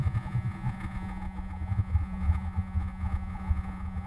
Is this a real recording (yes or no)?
no